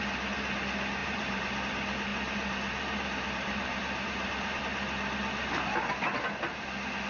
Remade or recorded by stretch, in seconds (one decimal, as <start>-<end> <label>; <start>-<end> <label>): 0.0-1.0 recorded; 1.0-1.6 remade; 1.6-2.1 recorded; 2.1-4.6 remade; 4.6-5.4 recorded; 5.4-5.9 remade; 5.9-7.1 recorded